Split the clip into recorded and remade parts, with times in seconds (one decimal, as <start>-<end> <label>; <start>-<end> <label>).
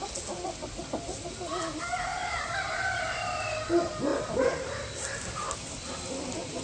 0.0-2.2 recorded; 2.2-3.5 remade; 3.5-4.1 recorded; 4.1-5.9 remade; 5.9-6.6 recorded